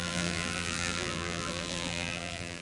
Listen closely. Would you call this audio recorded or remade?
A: remade